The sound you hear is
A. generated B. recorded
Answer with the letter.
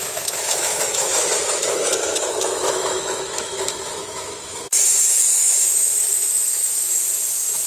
A